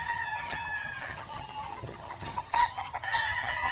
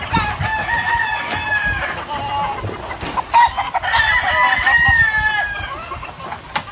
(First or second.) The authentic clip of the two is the second